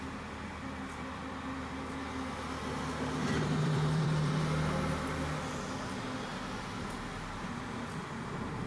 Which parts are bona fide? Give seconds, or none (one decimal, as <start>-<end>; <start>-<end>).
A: 0.0-3.2; 4.4-8.7